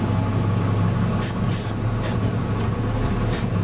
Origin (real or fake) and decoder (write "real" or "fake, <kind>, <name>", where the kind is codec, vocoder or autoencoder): real